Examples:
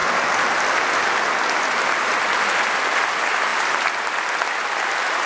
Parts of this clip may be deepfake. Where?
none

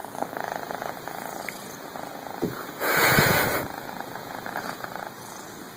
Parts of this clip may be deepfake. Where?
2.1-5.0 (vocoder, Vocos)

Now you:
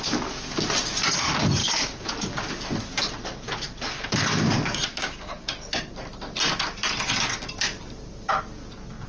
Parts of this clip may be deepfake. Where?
1.6-2.1 (codec, DAC); 4.9-5.8